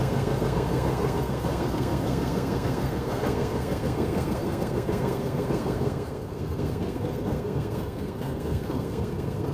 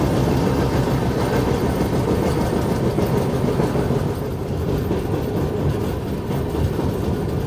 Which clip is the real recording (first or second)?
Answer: second